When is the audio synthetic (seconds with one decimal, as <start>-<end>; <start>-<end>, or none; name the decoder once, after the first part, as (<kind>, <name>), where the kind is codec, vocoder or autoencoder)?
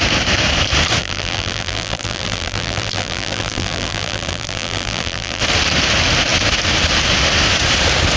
1.0-5.4 (vocoder, BigVGAN v2)